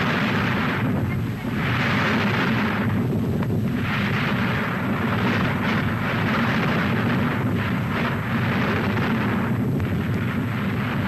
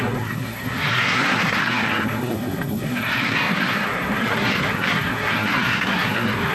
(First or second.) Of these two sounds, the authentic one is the first